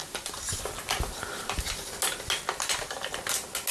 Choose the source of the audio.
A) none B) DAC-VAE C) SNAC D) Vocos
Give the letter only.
A